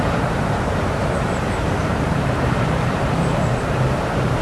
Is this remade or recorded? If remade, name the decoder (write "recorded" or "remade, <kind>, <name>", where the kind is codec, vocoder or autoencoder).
remade, vocoder, BigVGAN v2